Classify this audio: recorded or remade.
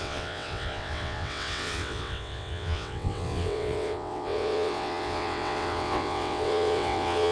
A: remade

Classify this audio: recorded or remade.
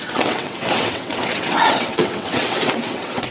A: remade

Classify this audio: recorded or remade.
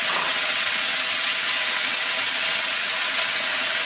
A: remade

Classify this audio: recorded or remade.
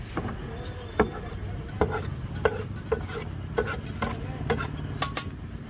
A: recorded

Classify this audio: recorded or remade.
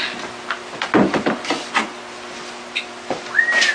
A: recorded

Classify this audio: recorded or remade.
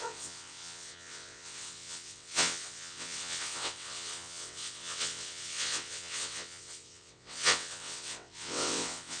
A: remade